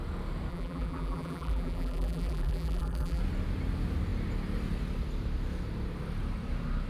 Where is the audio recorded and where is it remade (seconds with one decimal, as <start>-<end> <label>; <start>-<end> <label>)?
0.0-0.5 recorded; 0.5-3.2 remade; 3.2-6.9 recorded